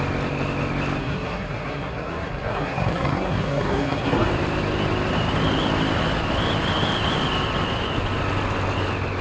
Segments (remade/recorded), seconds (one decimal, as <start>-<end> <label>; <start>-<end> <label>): 0.0-1.0 recorded; 1.0-4.3 remade; 4.3-9.2 recorded